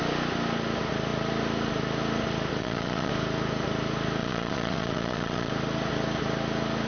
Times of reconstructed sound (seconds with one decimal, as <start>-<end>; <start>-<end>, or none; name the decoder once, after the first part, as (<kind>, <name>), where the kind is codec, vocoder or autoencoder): 2.6-3.1 (vocoder, Vocos); 4.2-5.5